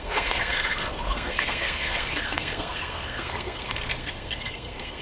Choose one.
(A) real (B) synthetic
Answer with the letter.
B